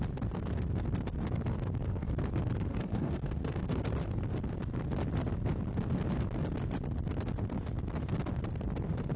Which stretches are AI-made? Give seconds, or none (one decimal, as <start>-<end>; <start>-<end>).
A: 1.5-2.1; 2.7-3.9